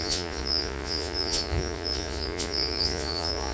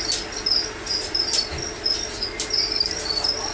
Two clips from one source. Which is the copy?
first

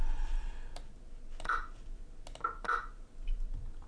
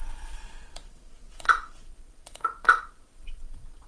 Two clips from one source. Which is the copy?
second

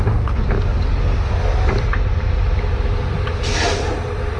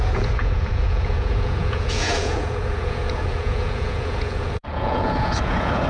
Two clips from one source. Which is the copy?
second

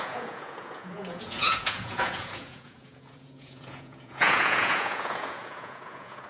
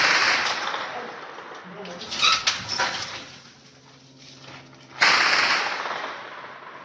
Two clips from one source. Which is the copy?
first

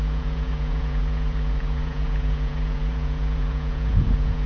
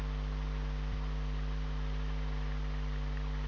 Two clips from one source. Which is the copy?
first